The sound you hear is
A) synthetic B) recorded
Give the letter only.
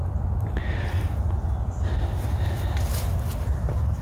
B